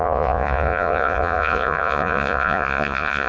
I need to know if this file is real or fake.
fake